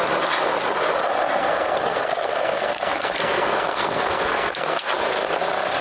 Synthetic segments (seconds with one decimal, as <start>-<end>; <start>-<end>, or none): 1.4-4.9